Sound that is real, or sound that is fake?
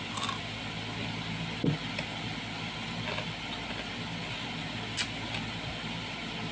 real